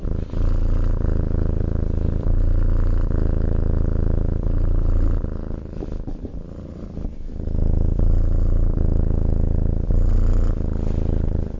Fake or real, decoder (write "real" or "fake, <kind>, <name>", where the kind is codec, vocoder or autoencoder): real